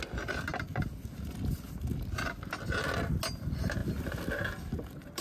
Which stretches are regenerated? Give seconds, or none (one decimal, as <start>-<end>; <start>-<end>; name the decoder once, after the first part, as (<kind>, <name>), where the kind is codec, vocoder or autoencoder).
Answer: none